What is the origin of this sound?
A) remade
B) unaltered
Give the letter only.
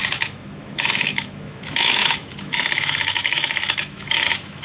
A